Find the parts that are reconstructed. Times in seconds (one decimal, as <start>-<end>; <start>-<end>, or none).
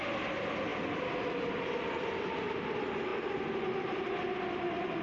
none